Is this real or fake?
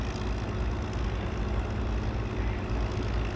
real